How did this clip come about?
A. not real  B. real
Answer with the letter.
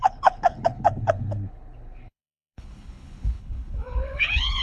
A